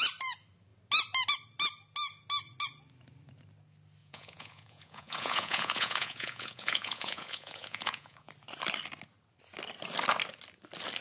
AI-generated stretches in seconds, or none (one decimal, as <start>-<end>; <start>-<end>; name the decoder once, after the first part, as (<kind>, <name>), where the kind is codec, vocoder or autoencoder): 4.0-8.3 (vocoder, Vocos)